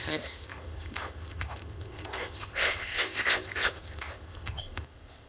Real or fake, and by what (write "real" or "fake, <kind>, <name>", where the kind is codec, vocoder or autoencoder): fake, codec, ZipCodec